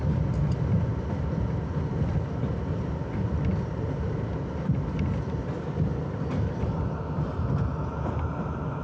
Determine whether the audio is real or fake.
real